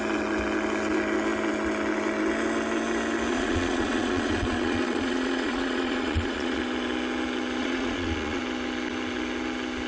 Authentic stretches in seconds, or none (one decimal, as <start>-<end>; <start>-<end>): 0.0-3.3; 6.6-7.6; 8.4-9.9